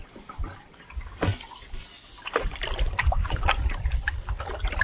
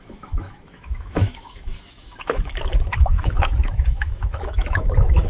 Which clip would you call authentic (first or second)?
first